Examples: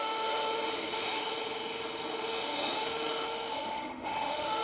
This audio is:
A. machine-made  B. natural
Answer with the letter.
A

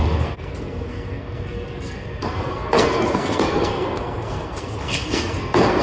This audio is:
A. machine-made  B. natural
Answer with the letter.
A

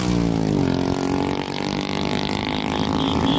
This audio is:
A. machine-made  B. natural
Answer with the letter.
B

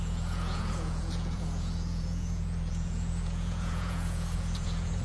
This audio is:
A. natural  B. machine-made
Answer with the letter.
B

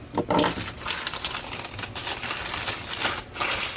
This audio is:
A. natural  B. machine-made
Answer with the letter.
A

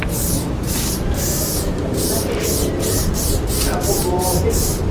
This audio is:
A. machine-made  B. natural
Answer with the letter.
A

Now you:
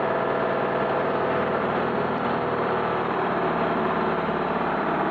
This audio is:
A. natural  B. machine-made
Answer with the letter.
B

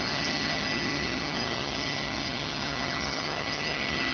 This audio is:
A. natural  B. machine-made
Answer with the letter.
B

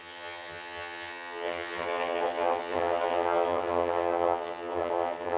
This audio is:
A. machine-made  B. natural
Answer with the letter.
A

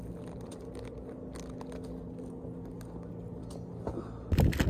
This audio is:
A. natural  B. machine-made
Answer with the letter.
A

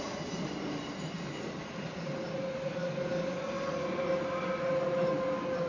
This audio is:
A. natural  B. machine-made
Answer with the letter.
A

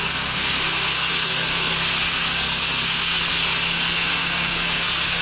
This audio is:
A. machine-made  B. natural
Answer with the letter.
A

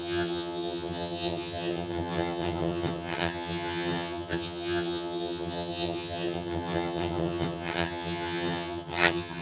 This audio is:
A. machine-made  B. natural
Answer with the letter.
A